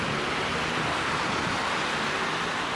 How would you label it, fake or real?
real